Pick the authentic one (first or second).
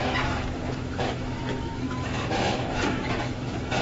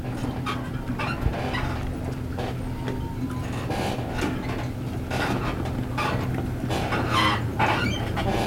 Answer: second